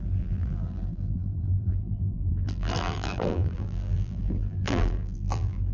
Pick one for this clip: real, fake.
fake